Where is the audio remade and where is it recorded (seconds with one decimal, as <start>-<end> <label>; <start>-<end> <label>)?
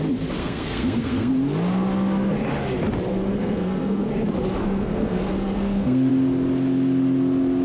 0.0-0.4 recorded; 0.4-1.3 remade; 1.3-3.1 recorded; 3.1-4.1 remade; 4.1-4.6 recorded; 4.6-6.1 remade; 6.1-7.6 recorded